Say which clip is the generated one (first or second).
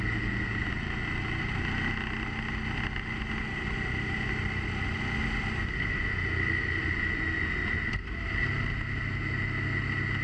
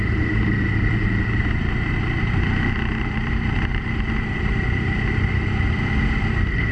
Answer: second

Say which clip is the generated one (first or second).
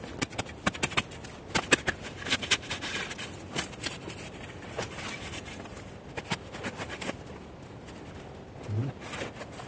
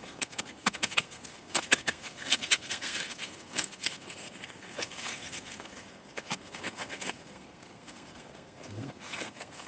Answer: second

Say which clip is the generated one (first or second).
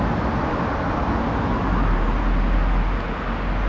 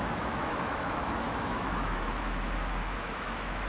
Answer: second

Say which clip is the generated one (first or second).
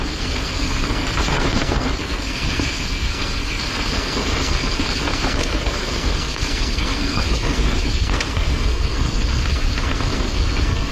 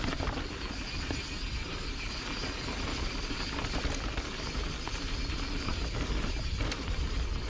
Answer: first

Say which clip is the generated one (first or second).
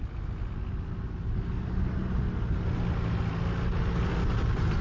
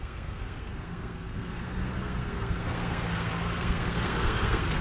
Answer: second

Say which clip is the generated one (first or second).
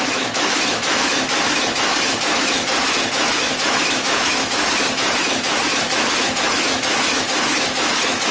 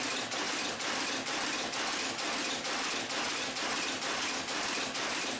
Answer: first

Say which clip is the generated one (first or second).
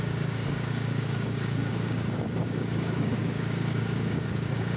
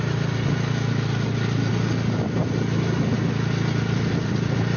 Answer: first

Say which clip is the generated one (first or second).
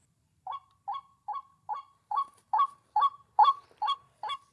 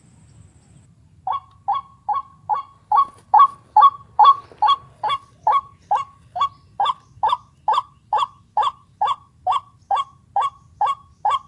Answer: first